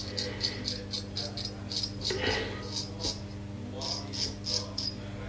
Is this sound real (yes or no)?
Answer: yes